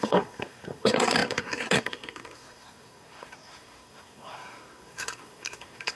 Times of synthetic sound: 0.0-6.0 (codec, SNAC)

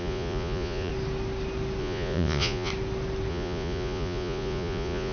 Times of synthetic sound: 0.0-0.9 (vocoder, Vocos); 1.8-2.7; 3.3-5.1